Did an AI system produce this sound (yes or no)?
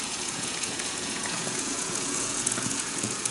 yes